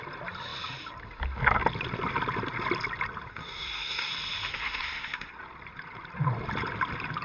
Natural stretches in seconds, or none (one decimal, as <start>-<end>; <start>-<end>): 0.0-3.3; 4.1-4.5; 5.4-7.2